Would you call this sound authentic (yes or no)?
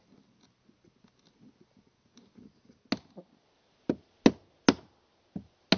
yes